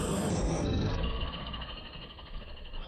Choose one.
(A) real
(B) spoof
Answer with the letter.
B